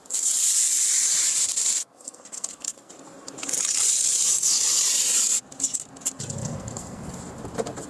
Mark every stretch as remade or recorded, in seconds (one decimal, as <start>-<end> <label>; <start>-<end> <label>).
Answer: 0.0-1.8 recorded; 1.8-2.9 remade; 2.9-6.4 recorded; 6.4-7.1 remade; 7.1-7.9 recorded